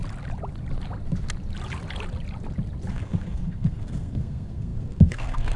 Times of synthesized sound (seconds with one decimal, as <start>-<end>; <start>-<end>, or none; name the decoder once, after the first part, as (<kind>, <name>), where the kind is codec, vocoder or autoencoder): 2.9-5.6 (codec, SNAC)